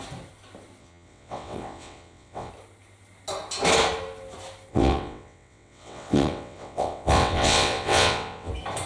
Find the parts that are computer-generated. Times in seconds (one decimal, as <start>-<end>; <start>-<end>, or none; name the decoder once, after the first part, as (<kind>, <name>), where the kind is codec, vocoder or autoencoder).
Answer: 0.8-2.5 (vocoder, WaveNeXt); 4.7-8.5